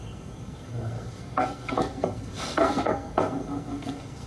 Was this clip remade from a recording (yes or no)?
yes